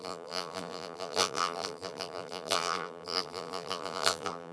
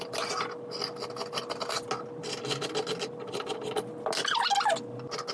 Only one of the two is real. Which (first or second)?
second